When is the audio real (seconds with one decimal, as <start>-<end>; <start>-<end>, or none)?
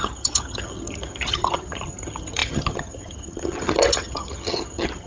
none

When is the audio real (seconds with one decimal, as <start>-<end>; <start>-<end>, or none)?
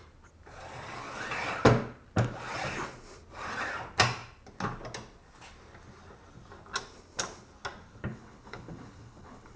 0.0-8.1